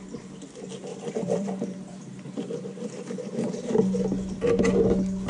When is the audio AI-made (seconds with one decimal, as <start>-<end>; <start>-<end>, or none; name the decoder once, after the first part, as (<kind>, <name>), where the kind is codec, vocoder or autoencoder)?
0.9-3.8 (vocoder, BigVGAN v2)